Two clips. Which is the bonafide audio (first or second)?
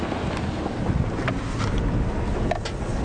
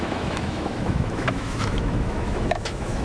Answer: first